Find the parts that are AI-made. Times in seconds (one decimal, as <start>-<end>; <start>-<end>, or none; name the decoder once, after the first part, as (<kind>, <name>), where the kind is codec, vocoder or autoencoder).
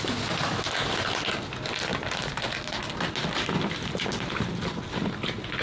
none